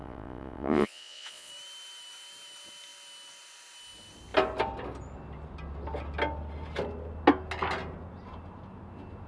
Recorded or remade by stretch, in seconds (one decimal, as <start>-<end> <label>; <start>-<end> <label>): 0.0-1.5 remade; 1.5-9.3 recorded